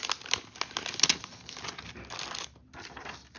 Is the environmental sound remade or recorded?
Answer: recorded